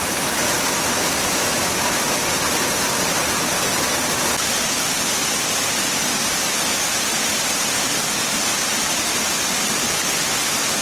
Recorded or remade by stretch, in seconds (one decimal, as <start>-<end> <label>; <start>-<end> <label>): 0.0-10.8 recorded